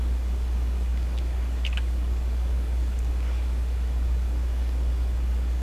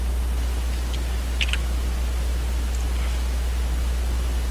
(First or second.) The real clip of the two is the second